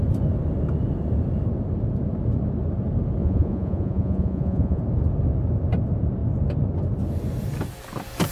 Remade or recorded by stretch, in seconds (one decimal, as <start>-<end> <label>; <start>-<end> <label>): 0.0-3.2 recorded; 3.2-4.8 remade; 4.8-8.3 recorded